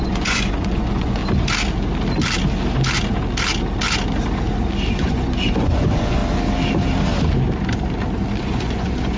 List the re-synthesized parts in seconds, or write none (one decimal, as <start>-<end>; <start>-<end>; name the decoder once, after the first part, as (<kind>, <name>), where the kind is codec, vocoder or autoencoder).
0.0-1.2 (vocoder, Vocos); 4.9-6.2; 8.4-9.2